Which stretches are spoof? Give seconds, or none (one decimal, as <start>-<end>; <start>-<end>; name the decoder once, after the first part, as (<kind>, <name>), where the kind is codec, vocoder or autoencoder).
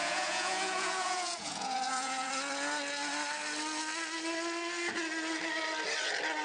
0.0-2.3 (vocoder, Vocos)